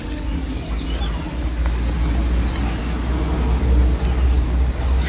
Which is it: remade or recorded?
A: recorded